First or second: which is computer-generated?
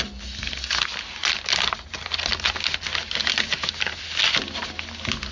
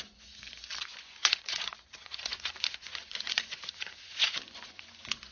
second